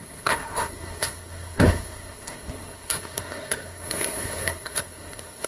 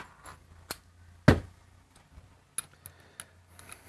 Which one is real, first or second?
second